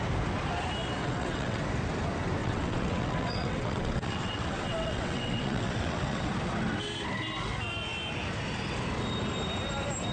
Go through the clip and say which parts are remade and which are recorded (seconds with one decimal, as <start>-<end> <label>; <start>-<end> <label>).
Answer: 0.0-1.0 recorded; 1.0-1.6 remade; 1.6-2.4 recorded; 2.4-6.3 remade; 6.3-10.1 recorded